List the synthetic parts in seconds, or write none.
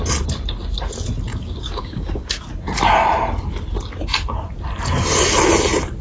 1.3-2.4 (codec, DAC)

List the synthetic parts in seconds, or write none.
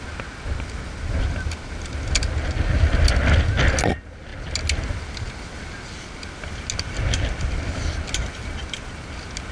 none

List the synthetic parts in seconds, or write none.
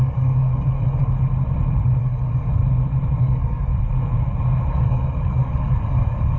0.0-1.0 (codec, DAC); 2.0-2.6; 3.2-3.7; 4.7-6.4